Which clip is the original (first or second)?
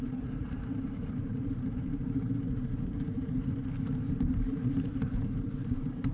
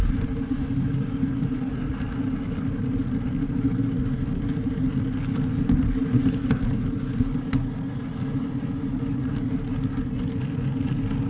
second